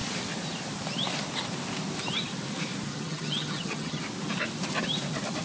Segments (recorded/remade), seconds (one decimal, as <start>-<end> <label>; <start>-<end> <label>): 0.0-2.9 recorded; 2.9-4.0 remade; 4.0-5.4 recorded